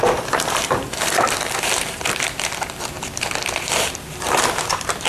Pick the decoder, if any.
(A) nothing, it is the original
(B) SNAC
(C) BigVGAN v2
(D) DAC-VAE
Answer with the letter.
C